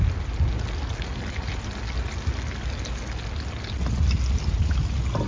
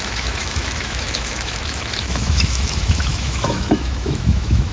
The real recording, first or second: first